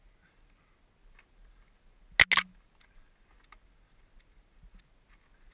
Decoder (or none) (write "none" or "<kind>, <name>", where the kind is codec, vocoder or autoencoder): none